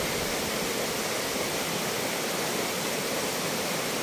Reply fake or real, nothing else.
real